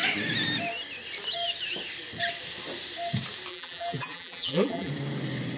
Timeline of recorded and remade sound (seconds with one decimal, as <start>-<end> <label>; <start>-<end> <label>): 0.0-3.5 recorded; 3.5-4.9 remade; 4.9-5.6 recorded